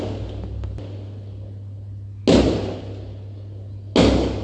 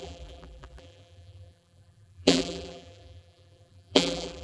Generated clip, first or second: second